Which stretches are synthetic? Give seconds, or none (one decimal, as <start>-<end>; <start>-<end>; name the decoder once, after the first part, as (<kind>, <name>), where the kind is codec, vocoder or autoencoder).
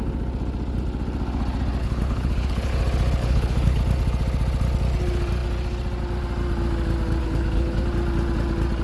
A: 1.8-2.7 (codec, HILCodec); 3.2-3.8; 7.2-7.8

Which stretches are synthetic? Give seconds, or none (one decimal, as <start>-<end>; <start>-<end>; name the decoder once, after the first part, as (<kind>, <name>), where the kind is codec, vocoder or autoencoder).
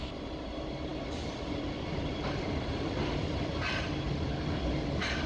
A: 0.9-3.6 (vocoder, BigVGAN v2)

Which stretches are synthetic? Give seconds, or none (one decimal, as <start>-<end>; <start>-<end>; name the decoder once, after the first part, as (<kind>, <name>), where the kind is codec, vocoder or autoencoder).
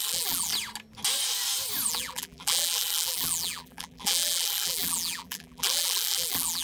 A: 0.0-0.5 (vocoder, BigVGAN v2); 1.9-6.6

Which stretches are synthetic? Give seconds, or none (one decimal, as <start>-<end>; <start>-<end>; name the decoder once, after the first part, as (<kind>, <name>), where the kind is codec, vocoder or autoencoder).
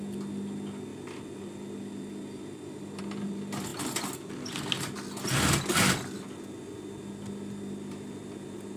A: none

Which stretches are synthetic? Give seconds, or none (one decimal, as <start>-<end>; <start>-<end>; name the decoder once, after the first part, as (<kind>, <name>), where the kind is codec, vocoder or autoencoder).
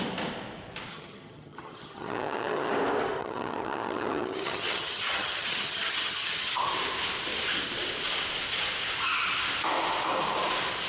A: 0.9-2.7 (vocoder, HiFi-GAN); 3.2-6.6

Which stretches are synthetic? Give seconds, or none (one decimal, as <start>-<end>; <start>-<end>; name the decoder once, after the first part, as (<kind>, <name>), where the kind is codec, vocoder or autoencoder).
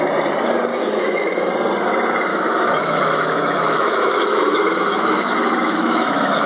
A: 0.7-1.5 (autoencoder, DAC-VAE); 2.3-6.5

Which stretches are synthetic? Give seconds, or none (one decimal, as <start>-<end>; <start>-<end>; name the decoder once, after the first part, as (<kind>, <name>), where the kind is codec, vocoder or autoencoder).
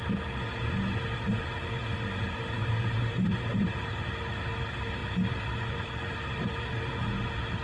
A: 2.6-4.0 (vocoder, BigVGAN v2); 5.0-6.8